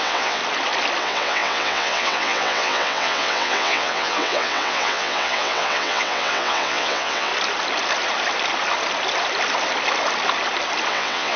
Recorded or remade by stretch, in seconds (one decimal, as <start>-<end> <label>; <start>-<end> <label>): 0.0-0.4 remade; 0.4-1.0 recorded; 1.0-7.3 remade; 7.3-10.9 recorded; 10.9-11.4 remade